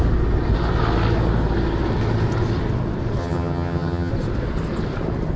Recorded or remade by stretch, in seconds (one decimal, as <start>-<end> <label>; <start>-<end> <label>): 0.0-3.2 recorded; 3.2-4.1 remade; 4.1-5.4 recorded